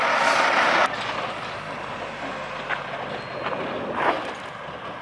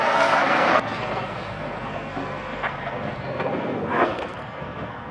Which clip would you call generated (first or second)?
second